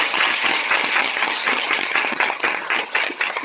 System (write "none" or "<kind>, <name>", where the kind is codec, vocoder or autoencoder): vocoder, HiFi-GAN